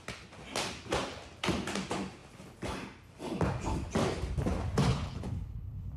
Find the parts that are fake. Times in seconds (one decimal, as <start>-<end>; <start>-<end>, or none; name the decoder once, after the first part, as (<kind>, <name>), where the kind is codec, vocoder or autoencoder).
4.9-6.0 (codec, HILCodec)